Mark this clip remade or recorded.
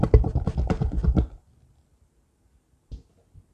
recorded